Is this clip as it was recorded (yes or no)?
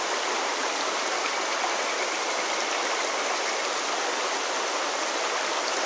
yes